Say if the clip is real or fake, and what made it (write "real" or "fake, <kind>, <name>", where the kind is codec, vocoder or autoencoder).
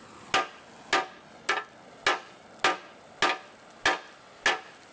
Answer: real